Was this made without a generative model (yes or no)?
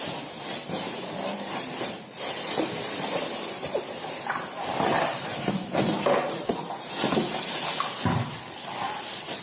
yes